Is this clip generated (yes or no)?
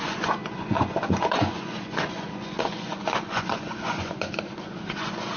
yes